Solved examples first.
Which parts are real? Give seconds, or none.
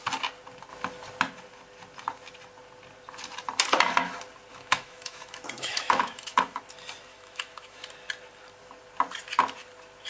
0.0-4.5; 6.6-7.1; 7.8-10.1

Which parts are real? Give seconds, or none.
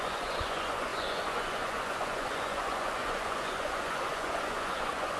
none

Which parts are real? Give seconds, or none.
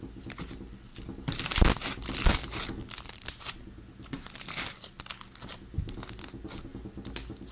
0.0-7.5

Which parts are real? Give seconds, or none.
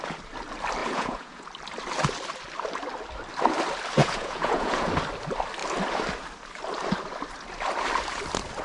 0.0-0.8; 1.4-4.0; 4.9-8.6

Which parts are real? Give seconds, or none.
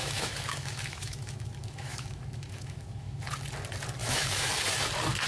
3.2-4.0; 4.5-5.3